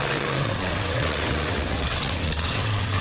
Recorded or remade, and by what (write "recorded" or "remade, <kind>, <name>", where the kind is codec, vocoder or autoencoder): remade, vocoder, WaveNeXt